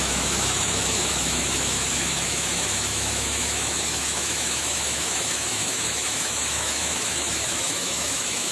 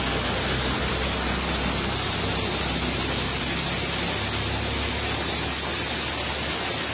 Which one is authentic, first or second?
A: second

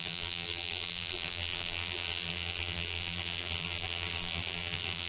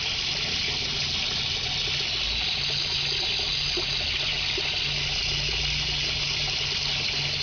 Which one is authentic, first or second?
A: second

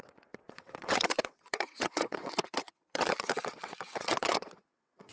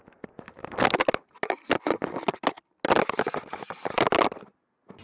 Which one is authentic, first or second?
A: second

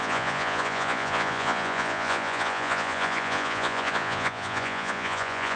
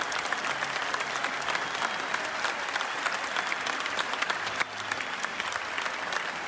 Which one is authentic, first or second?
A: second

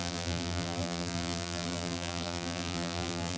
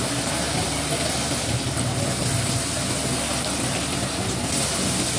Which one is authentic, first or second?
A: second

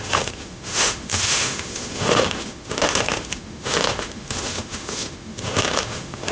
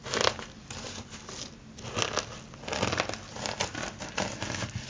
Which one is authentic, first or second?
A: second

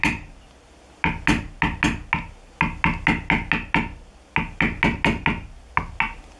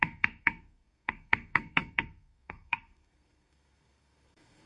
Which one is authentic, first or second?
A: first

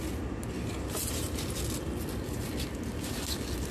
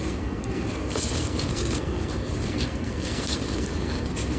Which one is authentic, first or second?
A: first